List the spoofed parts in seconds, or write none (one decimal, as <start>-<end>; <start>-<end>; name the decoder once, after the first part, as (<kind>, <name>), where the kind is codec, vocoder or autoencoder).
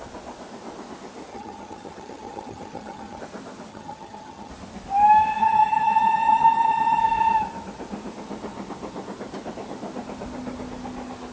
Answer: 1.3-3.2 (vocoder, HiFi-GAN); 3.7-4.5; 5.4-7.0